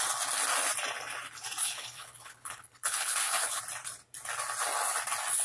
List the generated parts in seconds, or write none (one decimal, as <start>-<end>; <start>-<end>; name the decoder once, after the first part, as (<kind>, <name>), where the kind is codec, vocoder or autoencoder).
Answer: 1.6-3.6 (codec, HILCodec)